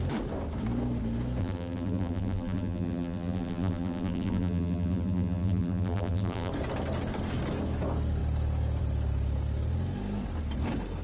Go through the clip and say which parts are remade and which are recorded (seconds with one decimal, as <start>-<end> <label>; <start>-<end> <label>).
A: 0.0-1.4 recorded; 1.4-6.5 remade; 6.5-11.0 recorded